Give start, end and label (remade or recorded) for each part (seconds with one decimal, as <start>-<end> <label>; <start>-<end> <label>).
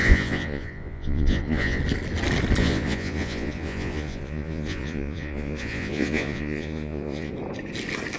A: 0.0-1.8 remade; 1.8-2.6 recorded; 2.6-7.3 remade; 7.3-8.2 recorded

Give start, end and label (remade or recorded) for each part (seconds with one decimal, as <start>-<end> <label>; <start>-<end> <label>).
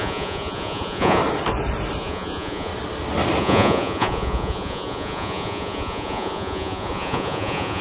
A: 0.0-1.2 remade; 1.2-2.0 recorded; 2.0-2.7 remade; 2.7-3.4 recorded; 3.4-7.8 remade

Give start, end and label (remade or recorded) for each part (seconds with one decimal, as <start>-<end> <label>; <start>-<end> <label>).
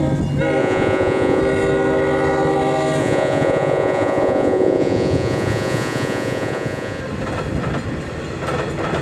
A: 0.0-0.6 recorded; 0.6-1.4 remade; 1.4-3.0 recorded; 3.0-7.0 remade; 7.0-9.0 recorded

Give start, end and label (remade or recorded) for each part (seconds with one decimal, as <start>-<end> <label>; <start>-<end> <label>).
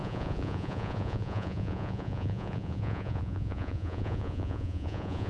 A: 0.0-5.3 remade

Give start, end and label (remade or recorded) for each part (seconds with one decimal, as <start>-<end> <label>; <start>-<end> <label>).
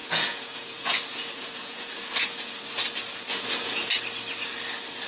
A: 0.0-2.6 remade; 2.6-3.3 recorded; 3.3-3.9 remade; 3.9-5.1 recorded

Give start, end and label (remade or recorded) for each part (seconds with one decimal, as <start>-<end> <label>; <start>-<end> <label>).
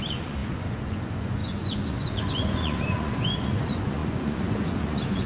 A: 0.0-5.3 remade